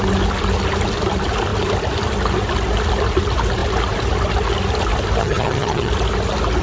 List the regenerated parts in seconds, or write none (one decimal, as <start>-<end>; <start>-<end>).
5.2-5.9